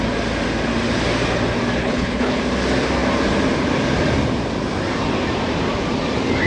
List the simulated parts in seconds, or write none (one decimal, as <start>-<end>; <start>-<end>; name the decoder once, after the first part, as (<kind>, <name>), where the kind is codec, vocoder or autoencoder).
1.8-2.4 (codec, HILCodec)

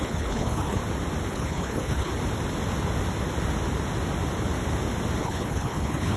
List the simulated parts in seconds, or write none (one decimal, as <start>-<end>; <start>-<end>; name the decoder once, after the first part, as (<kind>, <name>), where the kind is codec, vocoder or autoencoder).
0.0-0.8 (codec, HILCodec); 1.3-2.1; 5.2-6.2

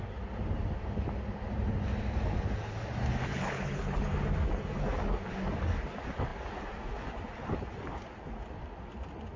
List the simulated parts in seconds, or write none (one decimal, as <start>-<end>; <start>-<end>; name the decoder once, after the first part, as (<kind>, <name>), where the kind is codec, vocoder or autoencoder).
3.3-4.0 (codec, HILCodec)

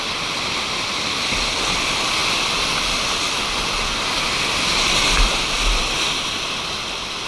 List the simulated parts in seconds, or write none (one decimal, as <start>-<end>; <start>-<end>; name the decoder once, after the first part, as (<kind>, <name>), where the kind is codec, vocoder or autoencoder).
none

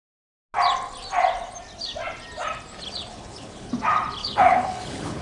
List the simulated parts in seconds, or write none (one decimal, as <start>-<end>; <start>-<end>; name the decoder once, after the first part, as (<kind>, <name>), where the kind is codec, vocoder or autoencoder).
3.1-3.7 (codec, HILCodec); 4.2-5.2

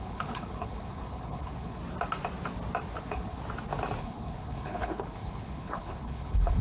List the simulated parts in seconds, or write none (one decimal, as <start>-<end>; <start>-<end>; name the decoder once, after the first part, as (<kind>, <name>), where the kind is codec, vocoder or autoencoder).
0.0-1.8 (codec, HILCodec); 3.0-3.4; 4.0-6.6